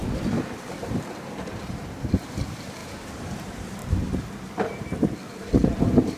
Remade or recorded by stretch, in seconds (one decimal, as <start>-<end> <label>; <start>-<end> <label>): 0.0-0.8 recorded; 0.8-6.2 remade